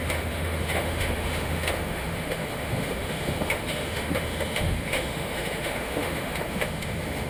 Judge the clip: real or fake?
fake